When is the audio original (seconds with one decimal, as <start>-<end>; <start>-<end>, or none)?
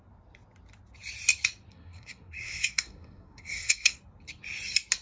0.0-1.7; 4.0-5.0